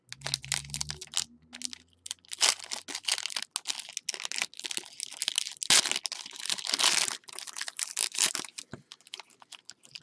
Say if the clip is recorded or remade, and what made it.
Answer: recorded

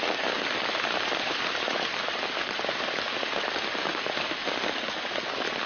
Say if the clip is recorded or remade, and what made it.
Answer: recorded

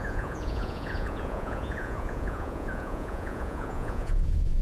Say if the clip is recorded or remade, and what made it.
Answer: remade, vocoder, Vocos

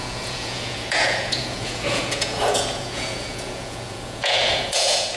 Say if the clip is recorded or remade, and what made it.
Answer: remade, vocoder, Vocos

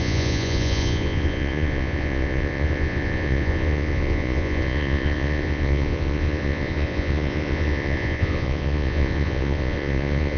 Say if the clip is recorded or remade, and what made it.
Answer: remade, vocoder, Vocos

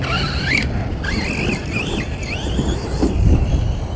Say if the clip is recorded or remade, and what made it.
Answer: recorded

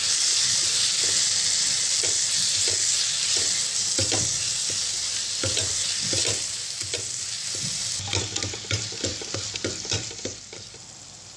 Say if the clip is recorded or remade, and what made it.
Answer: recorded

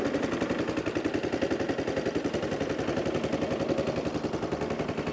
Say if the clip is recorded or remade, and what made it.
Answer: recorded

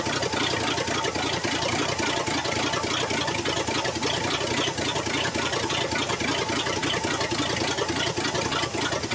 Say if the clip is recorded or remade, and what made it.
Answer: recorded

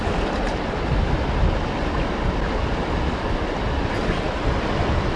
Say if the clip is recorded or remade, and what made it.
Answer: recorded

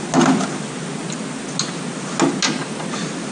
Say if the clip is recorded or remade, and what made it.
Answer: recorded